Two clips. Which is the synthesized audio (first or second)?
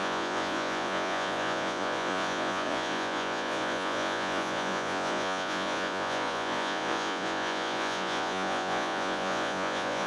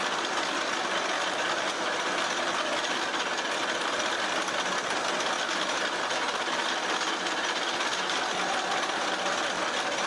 first